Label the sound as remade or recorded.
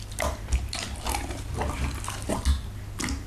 recorded